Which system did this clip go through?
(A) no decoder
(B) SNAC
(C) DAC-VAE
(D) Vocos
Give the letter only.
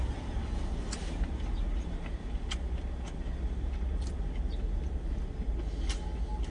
A